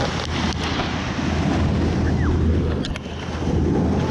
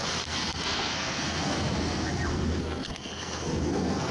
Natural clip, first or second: first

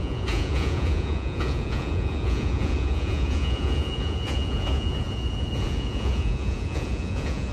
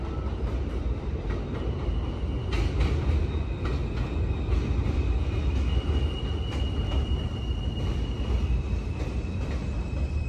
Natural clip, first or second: second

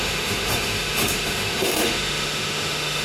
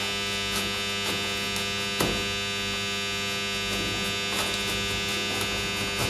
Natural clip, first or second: second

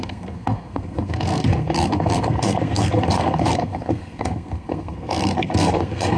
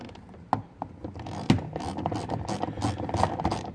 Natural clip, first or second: second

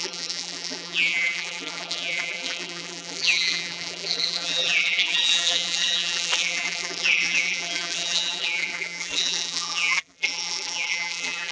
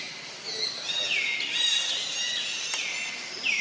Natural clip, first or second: second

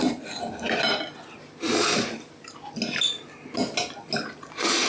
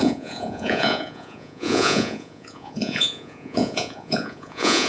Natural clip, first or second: first